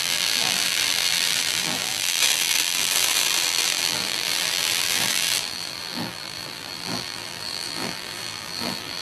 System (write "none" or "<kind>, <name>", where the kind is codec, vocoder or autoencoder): vocoder, BigVGAN v2